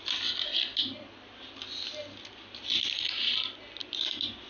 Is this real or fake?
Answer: real